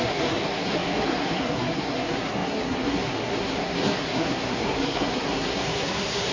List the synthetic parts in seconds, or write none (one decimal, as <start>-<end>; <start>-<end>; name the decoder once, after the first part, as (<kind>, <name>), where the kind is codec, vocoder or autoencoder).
0.0-6.3 (codec, SNAC)